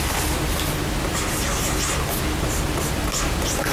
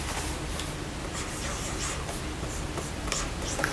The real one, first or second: first